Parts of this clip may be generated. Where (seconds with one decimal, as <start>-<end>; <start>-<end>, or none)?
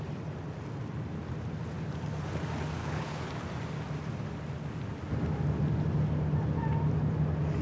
2.8-3.3